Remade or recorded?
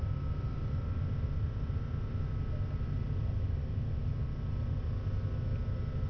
recorded